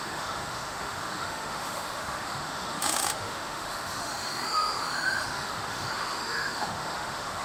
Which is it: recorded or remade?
remade